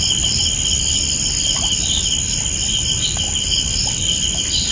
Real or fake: fake